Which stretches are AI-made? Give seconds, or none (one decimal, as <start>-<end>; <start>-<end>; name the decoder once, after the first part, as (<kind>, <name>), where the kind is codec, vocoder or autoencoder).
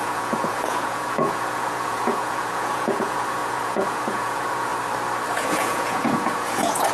0.0-4.7 (vocoder, Vocos); 5.3-6.9